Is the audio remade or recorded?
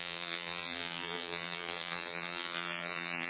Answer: remade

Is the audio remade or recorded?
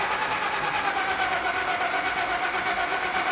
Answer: recorded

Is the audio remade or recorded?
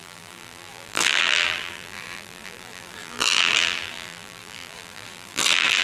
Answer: remade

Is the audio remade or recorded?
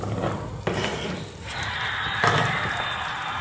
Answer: recorded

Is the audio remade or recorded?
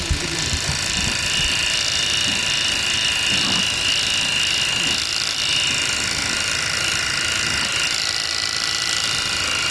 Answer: remade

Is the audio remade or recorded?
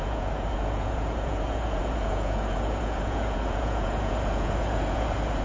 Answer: remade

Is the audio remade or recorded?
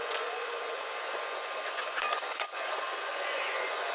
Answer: remade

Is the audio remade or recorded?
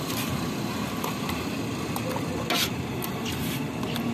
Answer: recorded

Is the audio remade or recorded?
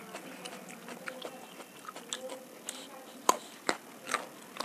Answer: recorded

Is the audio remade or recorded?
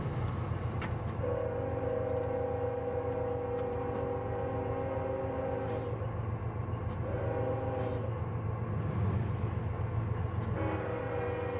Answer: recorded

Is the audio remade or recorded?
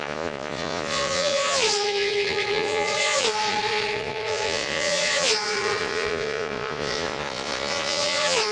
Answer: remade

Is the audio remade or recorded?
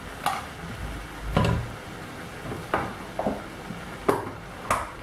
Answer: recorded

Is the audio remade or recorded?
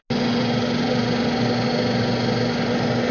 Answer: recorded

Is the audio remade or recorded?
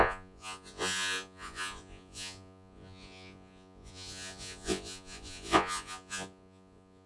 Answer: remade